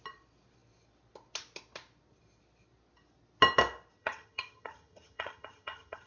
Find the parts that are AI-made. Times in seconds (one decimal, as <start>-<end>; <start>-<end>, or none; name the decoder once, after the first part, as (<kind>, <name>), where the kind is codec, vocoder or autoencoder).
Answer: 4.0-6.1 (vocoder, HiFi-GAN)